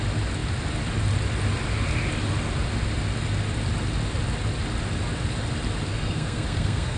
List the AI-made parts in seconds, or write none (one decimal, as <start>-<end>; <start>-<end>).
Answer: 5.9-7.0